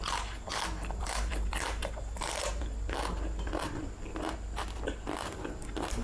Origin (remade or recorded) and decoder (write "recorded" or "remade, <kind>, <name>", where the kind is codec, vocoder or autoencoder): recorded